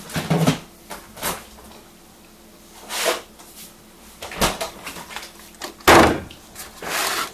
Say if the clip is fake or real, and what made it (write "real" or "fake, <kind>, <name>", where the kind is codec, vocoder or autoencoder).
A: real